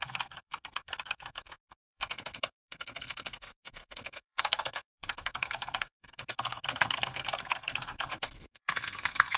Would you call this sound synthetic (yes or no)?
yes